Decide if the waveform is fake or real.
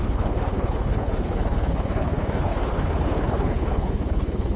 fake